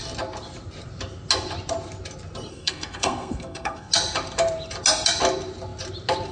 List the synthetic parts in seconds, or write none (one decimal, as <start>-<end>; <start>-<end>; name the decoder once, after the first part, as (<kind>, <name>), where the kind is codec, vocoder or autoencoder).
2.5-3.9 (codec, SNAC)